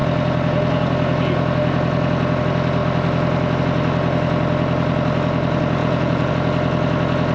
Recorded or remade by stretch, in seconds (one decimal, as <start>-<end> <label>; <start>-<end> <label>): 0.0-5.8 recorded; 5.8-6.3 remade; 6.3-7.3 recorded